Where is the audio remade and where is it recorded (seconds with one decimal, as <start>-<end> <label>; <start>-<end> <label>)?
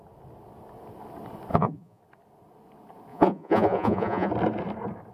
0.0-1.5 recorded; 1.5-2.0 remade; 2.0-3.1 recorded; 3.1-4.3 remade; 4.3-5.1 recorded